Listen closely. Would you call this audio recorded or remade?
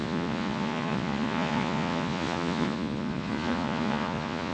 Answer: remade